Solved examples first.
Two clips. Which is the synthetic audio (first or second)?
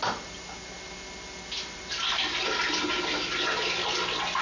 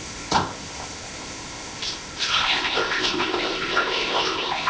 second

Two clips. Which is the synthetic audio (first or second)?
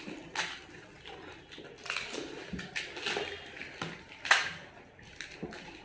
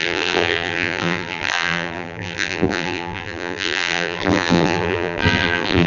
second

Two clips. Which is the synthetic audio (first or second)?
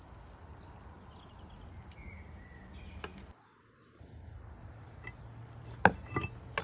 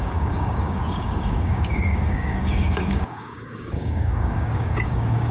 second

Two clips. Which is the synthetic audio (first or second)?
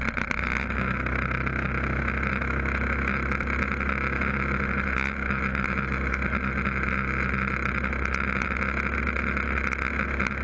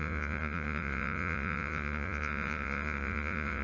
second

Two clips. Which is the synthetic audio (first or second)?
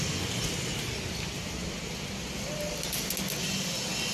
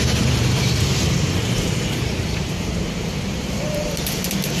second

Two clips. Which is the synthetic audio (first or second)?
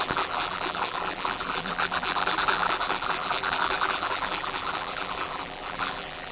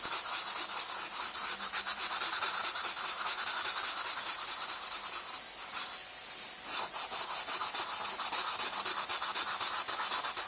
first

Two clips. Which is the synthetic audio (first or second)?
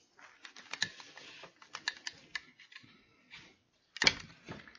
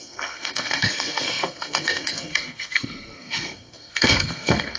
second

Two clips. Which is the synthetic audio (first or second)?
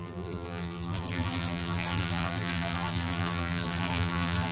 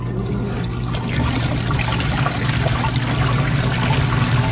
first